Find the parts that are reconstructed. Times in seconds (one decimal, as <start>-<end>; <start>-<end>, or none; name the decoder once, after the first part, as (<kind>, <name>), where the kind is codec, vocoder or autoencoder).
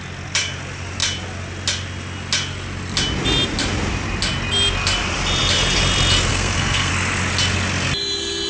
6.3-6.9 (codec, SNAC)